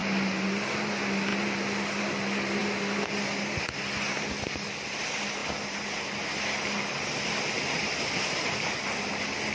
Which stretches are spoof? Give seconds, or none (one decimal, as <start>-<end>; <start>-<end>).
none